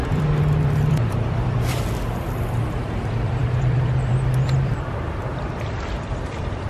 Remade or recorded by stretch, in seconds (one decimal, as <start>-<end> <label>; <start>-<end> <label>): 0.0-6.7 remade